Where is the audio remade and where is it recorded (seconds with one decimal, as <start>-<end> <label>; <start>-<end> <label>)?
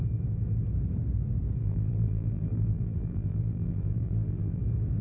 0.0-1.6 recorded; 1.6-4.6 remade; 4.6-5.0 recorded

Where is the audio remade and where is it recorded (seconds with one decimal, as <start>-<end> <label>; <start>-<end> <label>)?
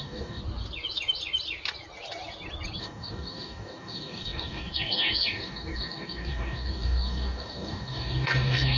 0.0-0.4 remade; 0.4-2.8 recorded; 2.8-8.8 remade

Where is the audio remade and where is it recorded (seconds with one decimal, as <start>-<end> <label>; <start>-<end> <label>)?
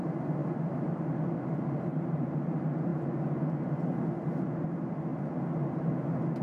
0.0-0.4 recorded; 0.4-1.2 remade; 1.2-1.9 recorded; 1.9-2.5 remade; 2.5-6.4 recorded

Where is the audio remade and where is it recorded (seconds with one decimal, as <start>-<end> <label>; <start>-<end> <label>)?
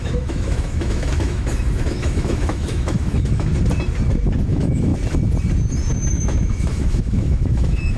0.0-3.5 remade; 3.5-4.5 recorded; 4.5-4.9 remade; 4.9-6.1 recorded; 6.1-8.0 remade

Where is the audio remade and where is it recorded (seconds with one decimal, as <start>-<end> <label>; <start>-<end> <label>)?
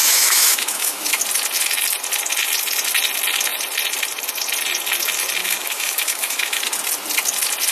0.0-1.2 remade; 1.2-5.4 recorded; 5.4-6.6 remade; 6.6-7.7 recorded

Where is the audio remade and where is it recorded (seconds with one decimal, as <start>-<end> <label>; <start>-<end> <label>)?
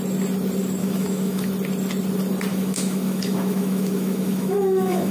0.0-0.8 recorded; 0.8-1.5 remade; 1.5-2.5 recorded; 2.5-5.1 remade